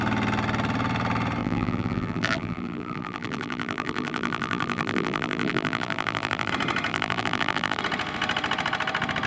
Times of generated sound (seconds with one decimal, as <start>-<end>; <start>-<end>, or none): 1.4-6.5; 6.9-7.8